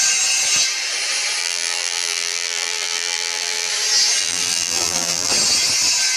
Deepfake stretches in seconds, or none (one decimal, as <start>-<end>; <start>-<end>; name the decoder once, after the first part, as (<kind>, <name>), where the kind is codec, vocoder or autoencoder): 1.4-3.7 (vocoder, BigVGAN v2); 4.2-5.3